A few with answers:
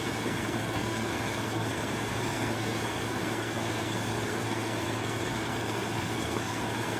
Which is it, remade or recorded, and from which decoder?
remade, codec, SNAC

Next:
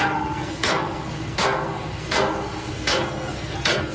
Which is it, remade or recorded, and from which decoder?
remade, codec, SNAC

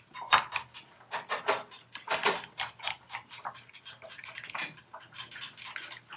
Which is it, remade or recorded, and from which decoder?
recorded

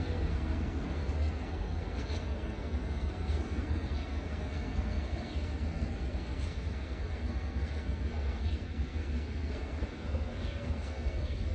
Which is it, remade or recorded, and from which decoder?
remade, codec, SNAC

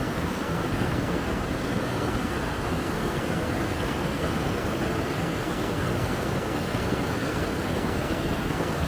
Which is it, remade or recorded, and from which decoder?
remade, codec, SNAC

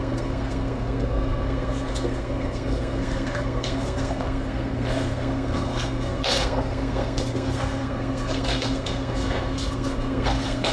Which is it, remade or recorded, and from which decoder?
remade, codec, SNAC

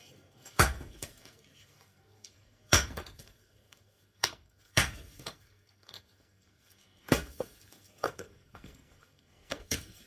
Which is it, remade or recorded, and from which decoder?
remade, codec, SNAC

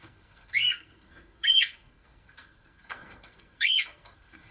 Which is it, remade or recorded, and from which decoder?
remade, codec, SNAC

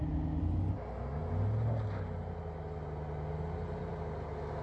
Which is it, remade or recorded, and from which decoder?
recorded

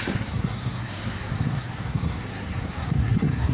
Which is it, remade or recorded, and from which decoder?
remade, codec, SNAC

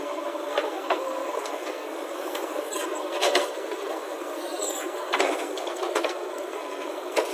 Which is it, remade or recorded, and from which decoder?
remade, codec, SNAC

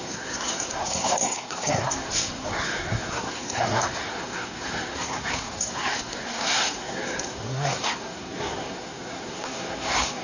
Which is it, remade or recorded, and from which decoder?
remade, codec, SNAC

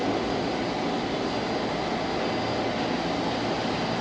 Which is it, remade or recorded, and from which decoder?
recorded